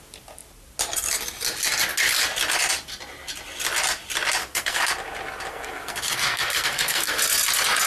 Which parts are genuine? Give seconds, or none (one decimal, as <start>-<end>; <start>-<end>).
0.0-4.4; 4.9-5.5; 7.2-7.9